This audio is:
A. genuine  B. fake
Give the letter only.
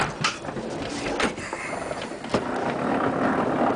A